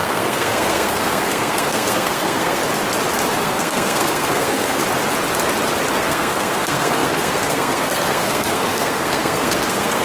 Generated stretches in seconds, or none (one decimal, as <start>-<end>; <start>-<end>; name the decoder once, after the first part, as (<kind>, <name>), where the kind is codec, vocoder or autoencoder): 0.0-2.6 (codec, SNAC); 3.4-4.8; 5.9-10.0